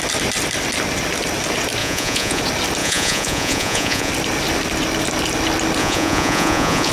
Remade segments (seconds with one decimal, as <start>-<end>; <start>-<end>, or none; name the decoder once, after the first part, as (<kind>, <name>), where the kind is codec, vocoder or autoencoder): 1.8-2.4 (vocoder, Vocos); 2.8-4.1; 5.8-6.9